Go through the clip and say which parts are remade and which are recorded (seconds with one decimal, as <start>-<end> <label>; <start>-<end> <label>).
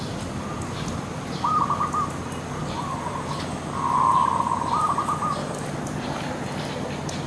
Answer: 0.0-7.3 recorded